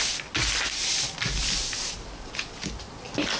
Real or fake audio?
real